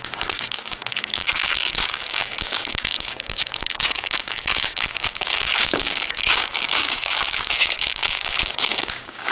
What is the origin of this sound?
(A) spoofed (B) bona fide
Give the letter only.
A